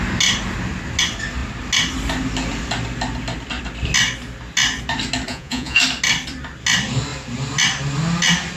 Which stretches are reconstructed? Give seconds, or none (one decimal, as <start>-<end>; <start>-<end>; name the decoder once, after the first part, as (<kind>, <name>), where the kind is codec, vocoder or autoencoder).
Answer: 5.3-5.8 (vocoder, Vocos)